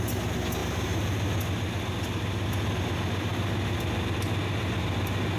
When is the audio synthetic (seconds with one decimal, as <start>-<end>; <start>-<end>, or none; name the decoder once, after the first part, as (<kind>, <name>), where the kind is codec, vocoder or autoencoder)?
none